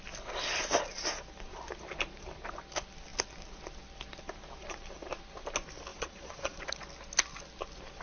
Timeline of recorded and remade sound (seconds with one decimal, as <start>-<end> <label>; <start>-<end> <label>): 0.0-5.9 recorded; 5.9-6.6 remade; 6.6-8.0 recorded